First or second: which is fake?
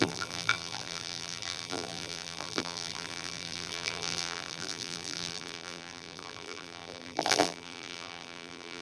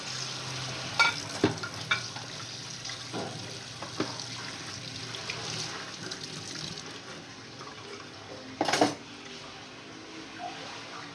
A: first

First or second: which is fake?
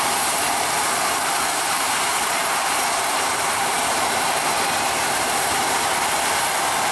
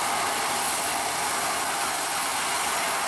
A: first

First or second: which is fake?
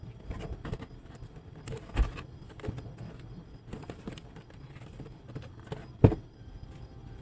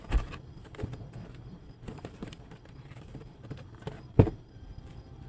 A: second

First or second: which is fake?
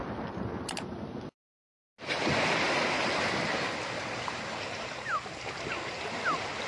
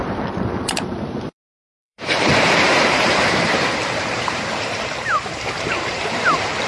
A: second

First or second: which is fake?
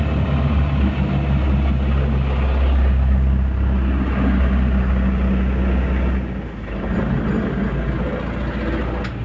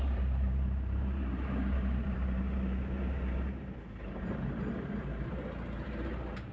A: second